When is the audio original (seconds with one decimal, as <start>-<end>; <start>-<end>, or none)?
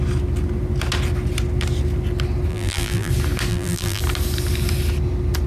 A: 0.0-2.5; 3.1-3.5; 4.0-5.5